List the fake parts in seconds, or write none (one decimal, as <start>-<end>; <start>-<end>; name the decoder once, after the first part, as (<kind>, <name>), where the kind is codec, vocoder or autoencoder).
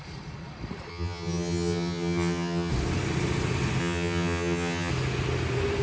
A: 0.9-2.7 (vocoder, HiFi-GAN); 3.8-4.9